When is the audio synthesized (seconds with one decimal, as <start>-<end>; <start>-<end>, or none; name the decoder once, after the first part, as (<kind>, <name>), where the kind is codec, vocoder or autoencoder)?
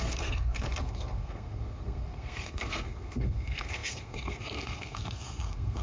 0.0-5.8 (codec, SNAC)